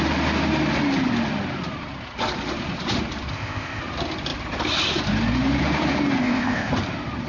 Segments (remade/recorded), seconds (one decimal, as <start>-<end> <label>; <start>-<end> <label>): 0.0-3.3 recorded; 3.3-3.8 remade; 3.8-6.2 recorded; 6.2-6.7 remade; 6.7-7.3 recorded